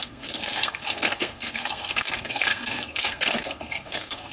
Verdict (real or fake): fake